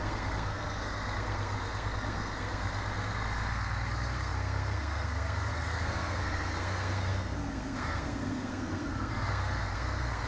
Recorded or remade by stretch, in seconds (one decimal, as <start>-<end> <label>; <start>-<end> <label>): 0.0-10.3 remade